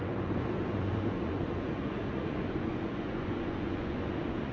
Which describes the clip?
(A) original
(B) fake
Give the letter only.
B